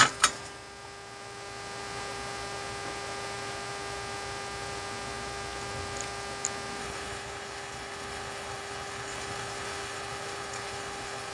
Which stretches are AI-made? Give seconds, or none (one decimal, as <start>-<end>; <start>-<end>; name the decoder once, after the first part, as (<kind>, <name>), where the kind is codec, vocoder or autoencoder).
6.8-11.3 (codec, HILCodec)